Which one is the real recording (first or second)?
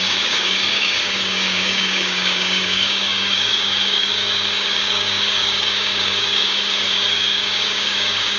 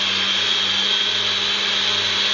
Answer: second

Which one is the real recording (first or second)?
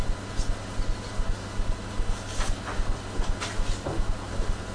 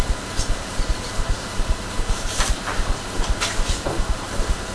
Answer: first